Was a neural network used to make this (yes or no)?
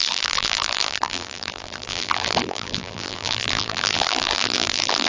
yes